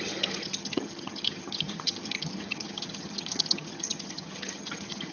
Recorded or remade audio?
remade